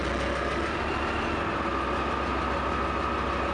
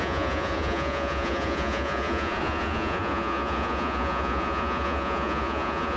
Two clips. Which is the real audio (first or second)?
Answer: first